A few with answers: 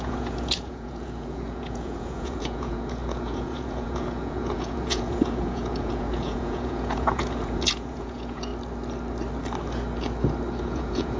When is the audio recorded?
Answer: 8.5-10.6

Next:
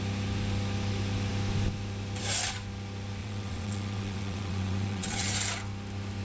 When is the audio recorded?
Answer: 0.0-3.2; 5.3-6.2

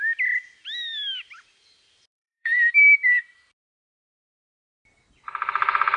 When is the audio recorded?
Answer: 0.0-2.1; 2.7-6.0